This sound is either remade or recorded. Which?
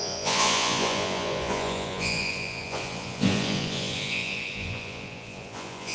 remade